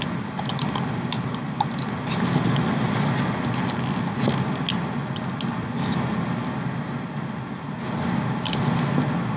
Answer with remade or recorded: recorded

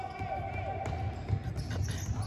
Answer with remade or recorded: recorded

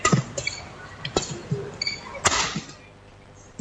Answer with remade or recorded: recorded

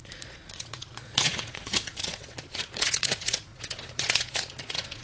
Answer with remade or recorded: remade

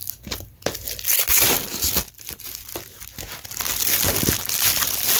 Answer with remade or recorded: recorded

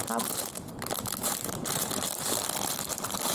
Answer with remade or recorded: remade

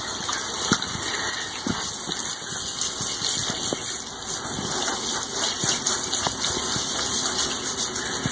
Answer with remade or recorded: recorded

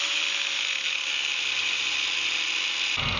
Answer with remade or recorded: recorded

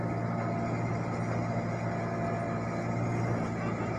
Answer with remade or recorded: recorded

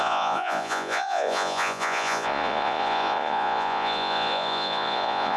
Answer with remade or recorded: remade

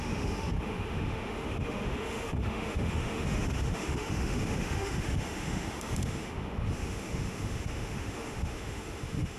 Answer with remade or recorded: remade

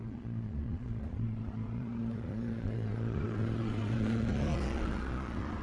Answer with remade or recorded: remade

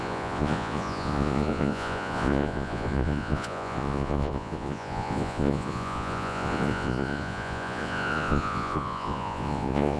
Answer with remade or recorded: remade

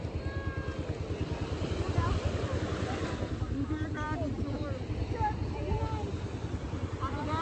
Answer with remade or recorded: recorded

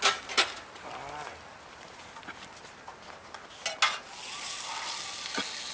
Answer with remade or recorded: recorded